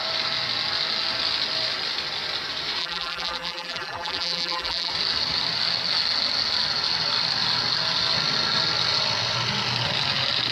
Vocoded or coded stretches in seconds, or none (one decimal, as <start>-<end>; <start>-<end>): 2.8-4.9

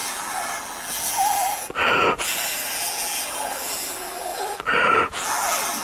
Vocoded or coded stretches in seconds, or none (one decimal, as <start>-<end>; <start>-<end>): 0.0-5.8